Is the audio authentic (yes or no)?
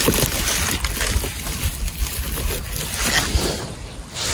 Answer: yes